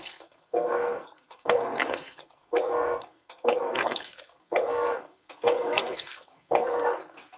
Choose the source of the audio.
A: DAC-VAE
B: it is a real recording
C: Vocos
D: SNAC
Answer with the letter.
D